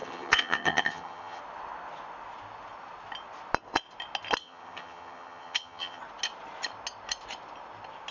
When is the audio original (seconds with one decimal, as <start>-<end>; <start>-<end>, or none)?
1.4-4.4; 6.0-8.1